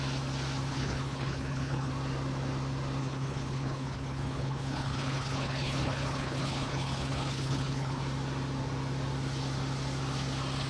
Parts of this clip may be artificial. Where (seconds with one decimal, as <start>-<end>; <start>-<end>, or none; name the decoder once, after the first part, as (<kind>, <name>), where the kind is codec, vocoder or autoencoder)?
0.7-1.9 (codec, HILCodec); 3.0-8.0